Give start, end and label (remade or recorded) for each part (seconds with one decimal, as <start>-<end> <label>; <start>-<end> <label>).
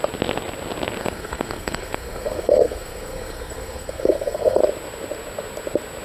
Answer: 0.0-1.0 recorded; 1.0-4.6 remade; 4.6-6.0 recorded